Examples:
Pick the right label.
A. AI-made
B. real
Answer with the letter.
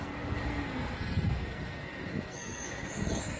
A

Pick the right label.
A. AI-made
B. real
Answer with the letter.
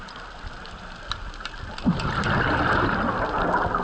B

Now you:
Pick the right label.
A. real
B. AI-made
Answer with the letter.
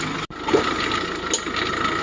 A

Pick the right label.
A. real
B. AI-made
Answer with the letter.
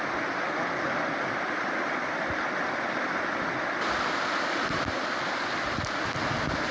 A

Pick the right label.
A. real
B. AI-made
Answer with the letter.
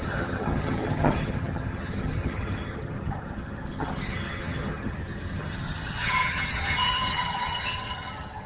B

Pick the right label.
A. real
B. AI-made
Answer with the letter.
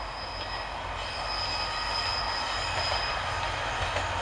A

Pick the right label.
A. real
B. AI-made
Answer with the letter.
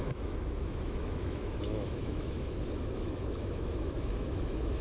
B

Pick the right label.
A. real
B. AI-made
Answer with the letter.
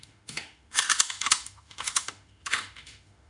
B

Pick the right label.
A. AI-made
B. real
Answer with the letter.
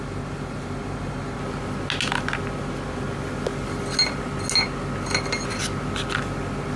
B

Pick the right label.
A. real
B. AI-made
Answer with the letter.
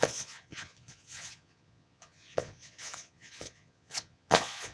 B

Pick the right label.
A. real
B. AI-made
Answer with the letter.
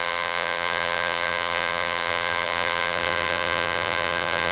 B